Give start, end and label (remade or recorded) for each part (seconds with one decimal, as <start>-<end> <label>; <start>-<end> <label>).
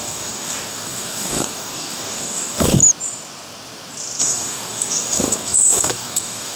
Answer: 0.0-2.8 remade; 2.8-4.2 recorded; 4.2-6.6 remade